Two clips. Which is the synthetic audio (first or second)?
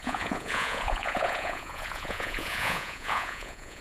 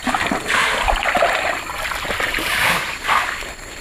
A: first